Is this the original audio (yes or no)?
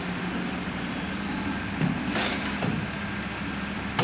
yes